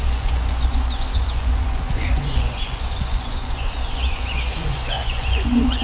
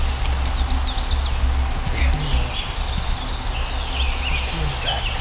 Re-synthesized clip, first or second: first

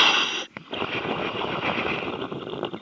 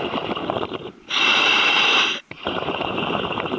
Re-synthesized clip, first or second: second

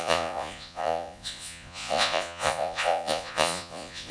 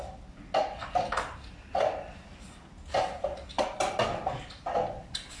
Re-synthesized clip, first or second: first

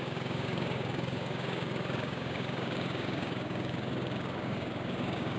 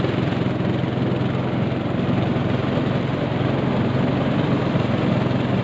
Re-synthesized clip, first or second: first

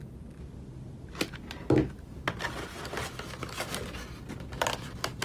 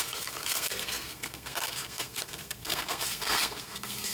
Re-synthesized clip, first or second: second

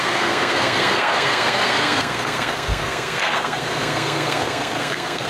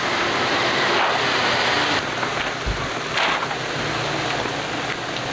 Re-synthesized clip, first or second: first